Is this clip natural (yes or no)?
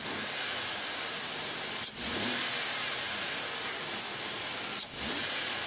yes